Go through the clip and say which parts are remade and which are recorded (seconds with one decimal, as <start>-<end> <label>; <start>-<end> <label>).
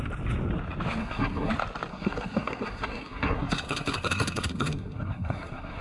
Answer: 0.0-1.0 recorded; 1.0-1.5 remade; 1.5-1.9 recorded; 1.9-5.8 remade